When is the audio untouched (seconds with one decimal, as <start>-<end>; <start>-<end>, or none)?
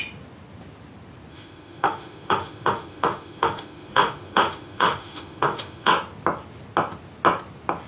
0.0-1.3; 5.9-7.9